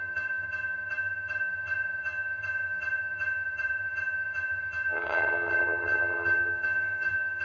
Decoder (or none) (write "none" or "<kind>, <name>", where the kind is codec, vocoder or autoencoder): vocoder, HiFi-GAN